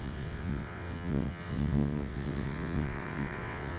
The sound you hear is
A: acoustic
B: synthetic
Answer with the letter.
B